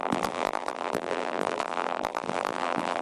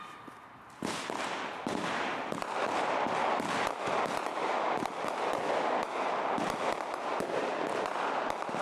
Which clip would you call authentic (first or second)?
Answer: second